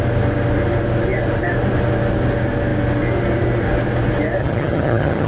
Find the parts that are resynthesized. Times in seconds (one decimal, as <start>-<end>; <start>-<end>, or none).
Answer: 4.4-5.3